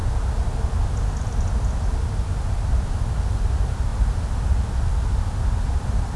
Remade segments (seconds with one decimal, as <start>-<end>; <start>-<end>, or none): none